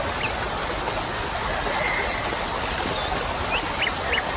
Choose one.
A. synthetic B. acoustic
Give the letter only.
B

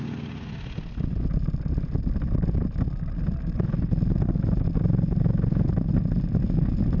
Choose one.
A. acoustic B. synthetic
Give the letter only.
A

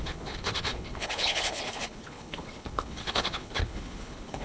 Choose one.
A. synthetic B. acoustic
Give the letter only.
A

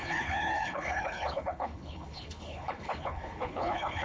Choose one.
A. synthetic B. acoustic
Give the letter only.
A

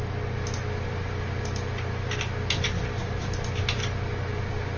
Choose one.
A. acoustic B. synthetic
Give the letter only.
A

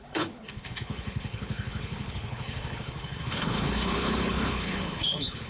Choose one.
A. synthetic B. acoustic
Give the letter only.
A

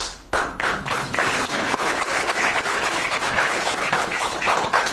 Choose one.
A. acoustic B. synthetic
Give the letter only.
B